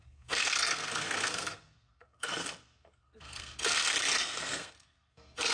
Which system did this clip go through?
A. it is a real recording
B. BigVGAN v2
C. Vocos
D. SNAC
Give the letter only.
D